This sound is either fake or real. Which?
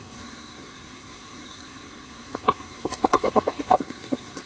fake